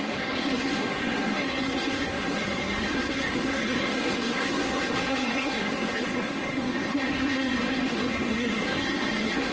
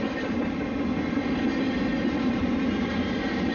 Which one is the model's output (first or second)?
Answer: first